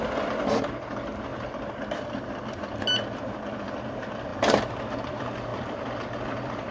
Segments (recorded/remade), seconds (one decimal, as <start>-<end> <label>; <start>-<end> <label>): 0.0-6.7 remade